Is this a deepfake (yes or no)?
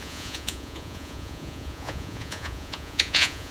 yes